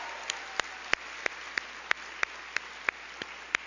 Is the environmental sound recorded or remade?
recorded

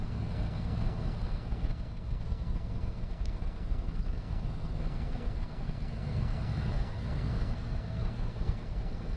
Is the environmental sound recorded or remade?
remade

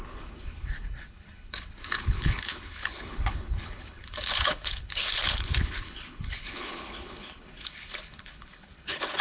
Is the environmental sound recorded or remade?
remade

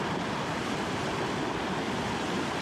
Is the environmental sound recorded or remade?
recorded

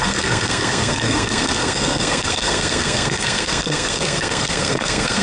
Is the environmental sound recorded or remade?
remade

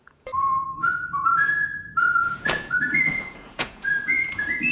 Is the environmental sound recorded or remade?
remade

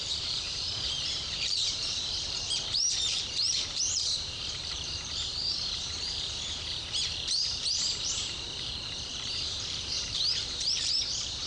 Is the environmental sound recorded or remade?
remade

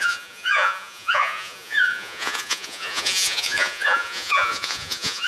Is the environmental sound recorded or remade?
remade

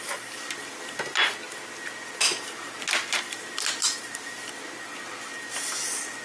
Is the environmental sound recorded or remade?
recorded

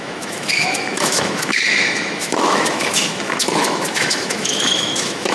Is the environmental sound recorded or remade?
remade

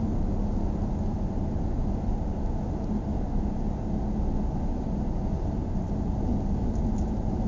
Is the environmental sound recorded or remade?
recorded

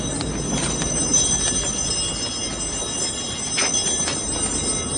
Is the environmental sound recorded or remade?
recorded